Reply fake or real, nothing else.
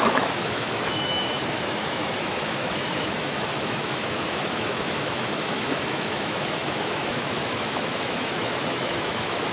fake